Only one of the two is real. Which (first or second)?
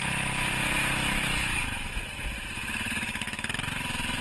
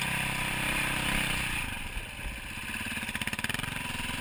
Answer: second